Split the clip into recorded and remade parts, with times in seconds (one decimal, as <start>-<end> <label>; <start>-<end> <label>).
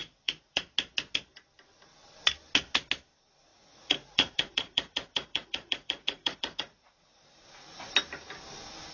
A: 0.0-0.7 remade; 0.7-3.5 recorded; 3.5-7.9 remade; 7.9-8.9 recorded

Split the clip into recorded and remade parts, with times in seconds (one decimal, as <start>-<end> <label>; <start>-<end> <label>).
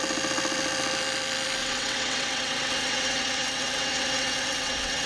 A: 0.0-1.6 recorded; 1.6-5.1 remade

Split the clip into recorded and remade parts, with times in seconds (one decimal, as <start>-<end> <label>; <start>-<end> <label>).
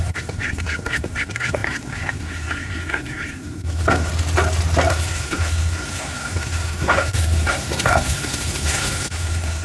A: 0.0-4.1 remade; 4.1-4.9 recorded; 4.9-9.6 remade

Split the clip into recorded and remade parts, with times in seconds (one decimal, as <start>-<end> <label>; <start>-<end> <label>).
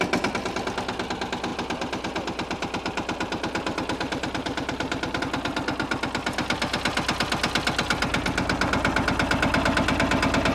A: 0.0-1.5 recorded; 1.5-5.2 remade; 5.2-10.5 recorded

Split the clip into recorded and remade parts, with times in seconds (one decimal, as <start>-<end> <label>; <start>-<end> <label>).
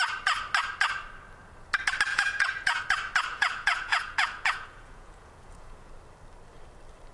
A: 0.0-2.1 recorded; 2.1-2.8 remade; 2.8-3.3 recorded; 3.3-5.9 remade; 5.9-7.1 recorded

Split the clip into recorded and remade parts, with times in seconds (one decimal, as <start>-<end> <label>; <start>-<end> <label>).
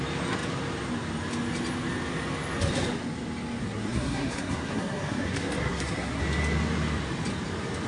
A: 0.0-3.6 recorded; 3.6-6.2 remade; 6.2-7.9 recorded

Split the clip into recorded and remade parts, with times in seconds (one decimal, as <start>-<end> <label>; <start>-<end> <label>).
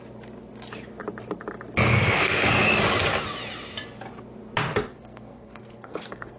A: 0.0-1.9 recorded; 1.9-2.7 remade; 2.7-4.9 recorded; 4.9-6.4 remade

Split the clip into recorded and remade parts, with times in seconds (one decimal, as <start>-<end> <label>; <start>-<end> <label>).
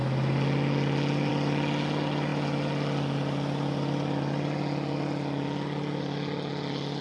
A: 0.0-7.0 recorded